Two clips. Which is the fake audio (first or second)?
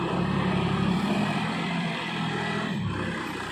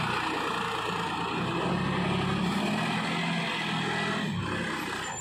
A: first